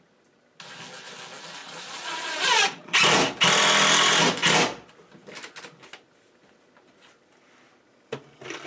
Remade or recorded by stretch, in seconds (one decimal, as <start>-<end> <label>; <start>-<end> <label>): 0.0-1.6 recorded; 1.6-2.9 remade; 2.9-8.7 recorded